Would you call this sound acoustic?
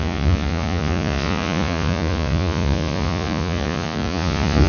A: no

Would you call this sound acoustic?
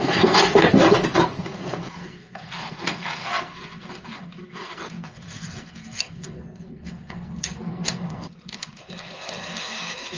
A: no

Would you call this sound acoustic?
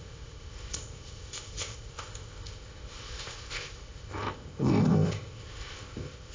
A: no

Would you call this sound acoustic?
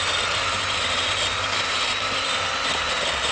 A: yes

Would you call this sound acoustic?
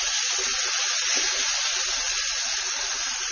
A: yes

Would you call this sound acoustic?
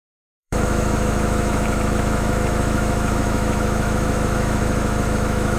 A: no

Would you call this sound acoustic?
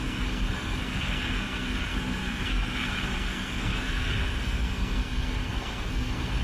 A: no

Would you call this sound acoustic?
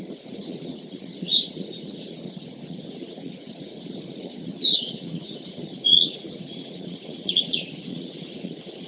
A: no